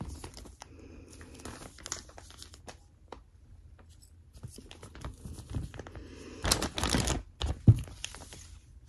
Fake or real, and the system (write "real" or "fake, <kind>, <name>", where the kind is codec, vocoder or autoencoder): real